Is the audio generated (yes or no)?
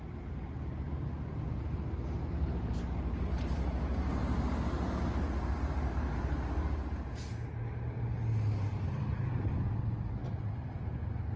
no